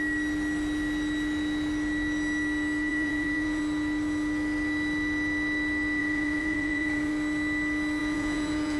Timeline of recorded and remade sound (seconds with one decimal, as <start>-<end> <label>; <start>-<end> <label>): 0.0-2.9 recorded; 2.9-3.6 remade; 3.6-6.0 recorded; 6.0-7.1 remade; 7.1-8.0 recorded; 8.0-8.8 remade